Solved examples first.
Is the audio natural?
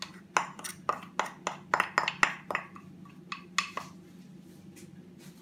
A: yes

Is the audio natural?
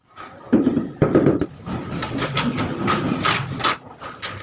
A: yes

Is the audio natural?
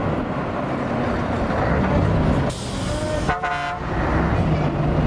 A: yes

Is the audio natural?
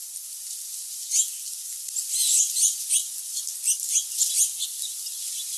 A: yes